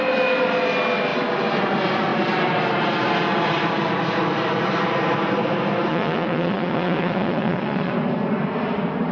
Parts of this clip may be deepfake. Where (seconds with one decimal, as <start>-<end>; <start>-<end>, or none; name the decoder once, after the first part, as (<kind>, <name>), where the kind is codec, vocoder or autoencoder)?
5.9-7.9 (vocoder, Vocos)